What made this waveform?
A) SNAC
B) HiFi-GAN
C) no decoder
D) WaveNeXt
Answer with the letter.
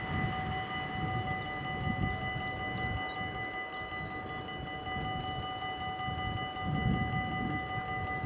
C